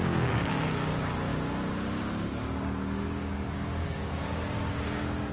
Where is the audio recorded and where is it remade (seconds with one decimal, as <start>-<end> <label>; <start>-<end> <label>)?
0.0-5.3 remade

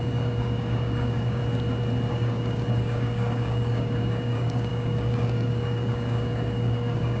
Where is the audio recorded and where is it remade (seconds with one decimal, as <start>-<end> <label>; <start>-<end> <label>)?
0.0-1.4 remade; 1.4-2.1 recorded; 2.1-7.2 remade

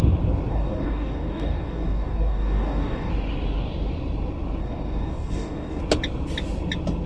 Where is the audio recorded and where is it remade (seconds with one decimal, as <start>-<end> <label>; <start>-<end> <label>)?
0.0-0.5 recorded; 0.5-3.1 remade; 3.1-4.6 recorded; 4.6-5.8 remade; 5.8-7.1 recorded

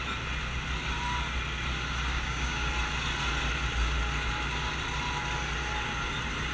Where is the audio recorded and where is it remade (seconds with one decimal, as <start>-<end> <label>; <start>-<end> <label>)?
0.0-2.1 recorded; 2.1-2.7 remade; 2.7-6.5 recorded

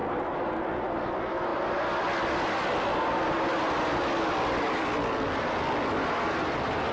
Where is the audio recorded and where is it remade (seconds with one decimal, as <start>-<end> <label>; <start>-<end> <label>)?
0.0-6.9 recorded

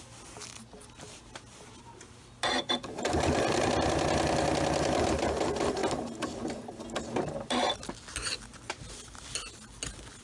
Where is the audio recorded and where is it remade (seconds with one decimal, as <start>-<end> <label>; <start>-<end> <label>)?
0.0-10.2 recorded